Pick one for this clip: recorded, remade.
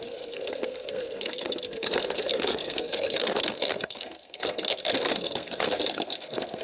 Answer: remade